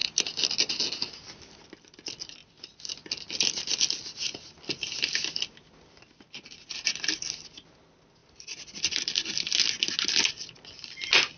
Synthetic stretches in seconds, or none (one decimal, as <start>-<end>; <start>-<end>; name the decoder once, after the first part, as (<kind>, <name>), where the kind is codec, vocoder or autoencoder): 8.2-9.5 (vocoder, BigVGAN v2)